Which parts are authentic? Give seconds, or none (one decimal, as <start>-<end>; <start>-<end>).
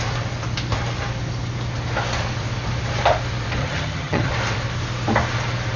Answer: 0.0-3.6; 4.3-5.8